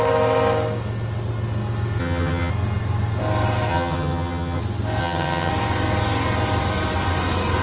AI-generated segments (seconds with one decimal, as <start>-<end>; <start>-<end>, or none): 2.0-2.5; 3.7-4.6; 5.0-5.5